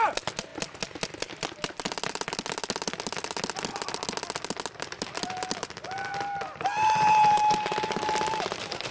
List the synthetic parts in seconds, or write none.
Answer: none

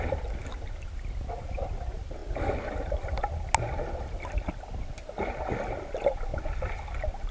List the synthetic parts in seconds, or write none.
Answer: none

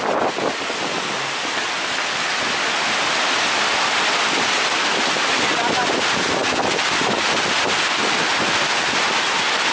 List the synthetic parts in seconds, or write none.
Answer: none

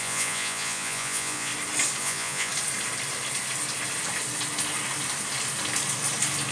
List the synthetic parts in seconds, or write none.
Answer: 0.0-1.5 (vocoder, Vocos); 2.0-2.5

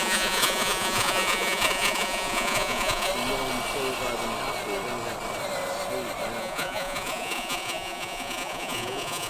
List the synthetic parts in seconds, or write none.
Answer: 0.0-3.1 (vocoder, Vocos); 6.4-9.3